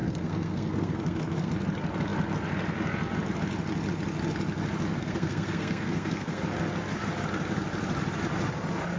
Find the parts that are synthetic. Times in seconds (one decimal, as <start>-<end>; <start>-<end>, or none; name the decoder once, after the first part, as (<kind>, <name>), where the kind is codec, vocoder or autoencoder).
0.0-1.5 (codec, SNAC); 5.0-6.4